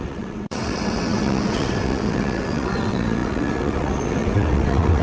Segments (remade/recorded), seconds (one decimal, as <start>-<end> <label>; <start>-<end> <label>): 0.0-5.0 remade